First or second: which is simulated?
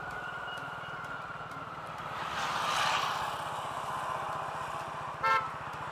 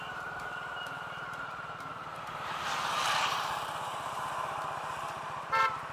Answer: second